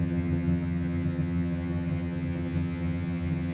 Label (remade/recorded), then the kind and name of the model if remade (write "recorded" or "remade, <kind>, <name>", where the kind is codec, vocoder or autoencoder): remade, vocoder, HiFi-GAN